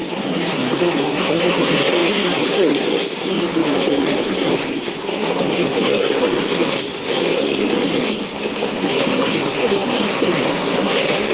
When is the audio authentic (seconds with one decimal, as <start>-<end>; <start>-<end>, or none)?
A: none